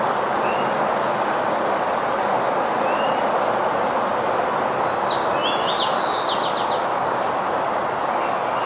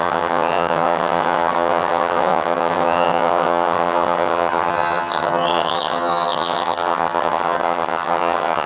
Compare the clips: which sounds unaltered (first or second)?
first